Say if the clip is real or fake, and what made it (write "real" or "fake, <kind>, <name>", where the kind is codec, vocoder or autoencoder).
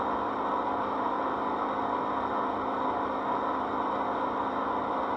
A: real